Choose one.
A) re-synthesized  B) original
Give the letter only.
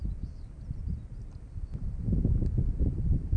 A